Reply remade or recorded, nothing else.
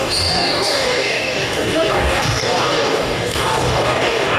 remade